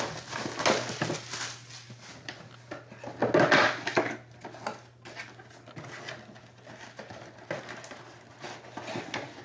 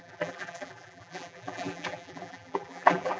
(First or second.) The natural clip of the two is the first